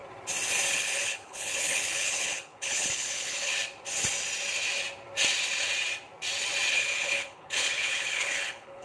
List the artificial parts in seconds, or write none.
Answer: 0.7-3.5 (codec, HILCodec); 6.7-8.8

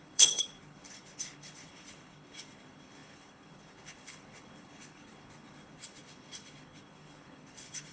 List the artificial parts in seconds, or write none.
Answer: 0.0-7.9 (codec, HILCodec)

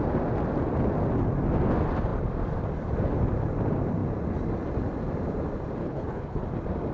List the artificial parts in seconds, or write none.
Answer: 5.8-6.4 (codec, HILCodec)

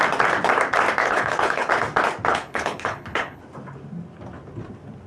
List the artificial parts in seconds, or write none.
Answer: 1.0-1.7 (codec, HILCodec); 2.3-3.4

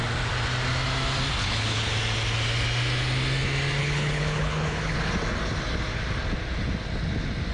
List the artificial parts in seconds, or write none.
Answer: 1.4-1.9 (codec, HILCodec); 3.8-5.1

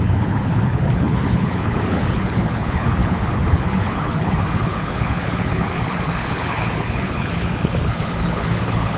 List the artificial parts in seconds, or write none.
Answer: 0.0-9.0 (codec, HILCodec)

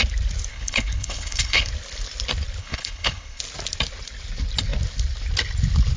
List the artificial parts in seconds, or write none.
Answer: 0.5-1.7 (codec, HILCodec); 2.6-3.4